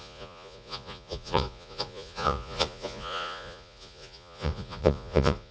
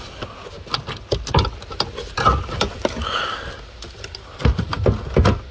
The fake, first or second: first